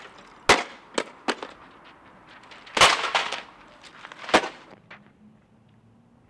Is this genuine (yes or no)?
yes